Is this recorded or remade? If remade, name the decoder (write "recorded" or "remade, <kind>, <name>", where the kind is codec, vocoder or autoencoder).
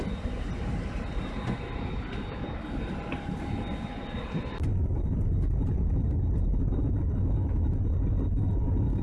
recorded